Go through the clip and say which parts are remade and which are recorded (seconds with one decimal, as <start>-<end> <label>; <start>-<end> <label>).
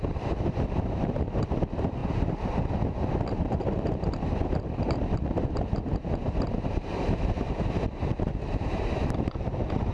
0.0-9.9 remade